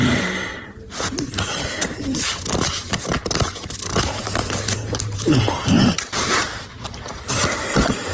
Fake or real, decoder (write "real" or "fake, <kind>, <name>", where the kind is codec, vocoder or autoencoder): fake, vocoder, BigVGAN v2